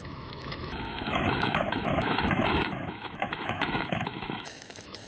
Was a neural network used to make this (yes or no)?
yes